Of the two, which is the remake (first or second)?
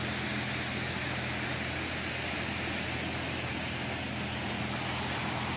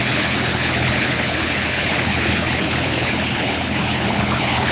second